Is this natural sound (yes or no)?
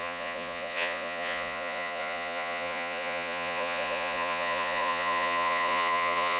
no